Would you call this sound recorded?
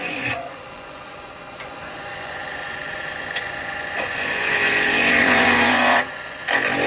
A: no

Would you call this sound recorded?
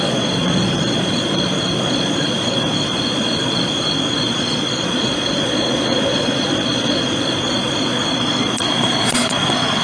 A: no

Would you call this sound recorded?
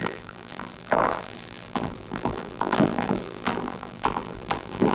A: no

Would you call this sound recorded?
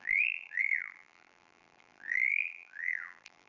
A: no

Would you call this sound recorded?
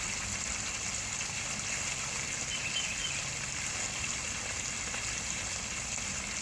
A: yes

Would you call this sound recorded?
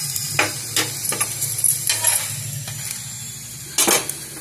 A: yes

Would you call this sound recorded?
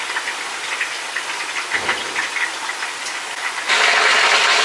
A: yes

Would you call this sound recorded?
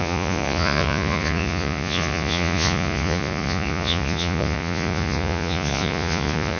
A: no